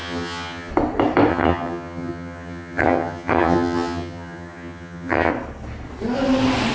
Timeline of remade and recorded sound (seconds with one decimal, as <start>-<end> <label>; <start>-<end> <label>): 0.0-0.7 remade; 0.7-1.3 recorded; 1.3-5.3 remade; 5.3-6.7 recorded